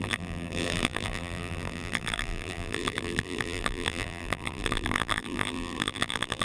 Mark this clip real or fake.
fake